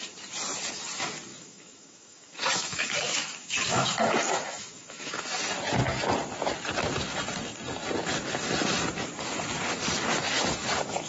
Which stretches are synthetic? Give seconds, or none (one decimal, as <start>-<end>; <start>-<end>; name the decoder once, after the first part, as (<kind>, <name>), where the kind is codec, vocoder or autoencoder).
1.3-5.4 (autoencoder, DAC-VAE)